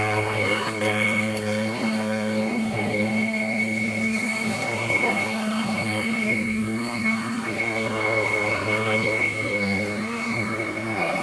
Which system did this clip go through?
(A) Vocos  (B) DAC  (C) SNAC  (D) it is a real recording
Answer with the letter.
C